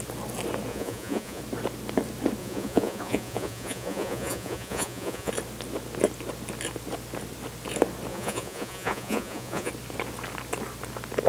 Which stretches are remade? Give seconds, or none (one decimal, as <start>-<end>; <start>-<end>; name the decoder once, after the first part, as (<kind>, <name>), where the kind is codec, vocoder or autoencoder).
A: 0.7-1.4 (vocoder, Vocos); 2.4-5.3; 8.1-9.7